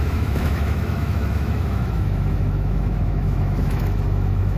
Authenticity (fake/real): fake